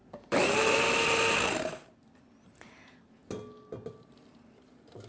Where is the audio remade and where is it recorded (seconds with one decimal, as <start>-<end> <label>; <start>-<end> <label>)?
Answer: 0.0-3.2 remade; 3.2-4.5 recorded; 4.5-5.1 remade